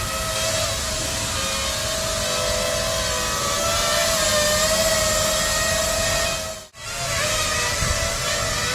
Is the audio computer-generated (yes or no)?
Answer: no